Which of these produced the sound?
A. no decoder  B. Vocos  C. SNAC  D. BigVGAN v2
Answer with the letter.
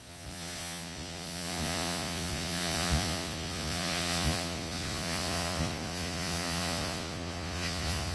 B